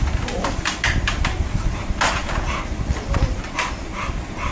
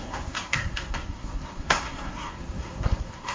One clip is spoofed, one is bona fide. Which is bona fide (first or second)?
first